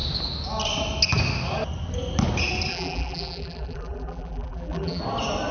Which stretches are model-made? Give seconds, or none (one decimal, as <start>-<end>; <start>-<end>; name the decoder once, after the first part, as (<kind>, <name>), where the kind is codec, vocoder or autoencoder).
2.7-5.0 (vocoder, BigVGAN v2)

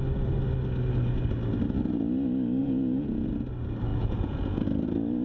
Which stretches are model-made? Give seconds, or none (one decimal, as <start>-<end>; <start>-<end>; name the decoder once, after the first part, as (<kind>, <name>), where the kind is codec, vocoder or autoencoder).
2.6-3.3 (vocoder, Vocos); 3.9-4.6

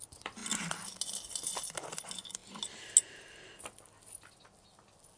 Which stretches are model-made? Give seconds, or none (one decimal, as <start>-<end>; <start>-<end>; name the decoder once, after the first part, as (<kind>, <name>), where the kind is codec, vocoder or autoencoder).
none